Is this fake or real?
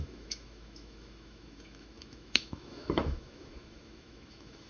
fake